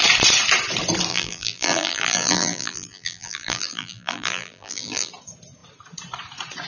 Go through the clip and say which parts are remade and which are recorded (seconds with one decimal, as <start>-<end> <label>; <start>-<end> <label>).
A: 0.0-1.1 recorded; 1.1-5.1 remade; 5.1-6.7 recorded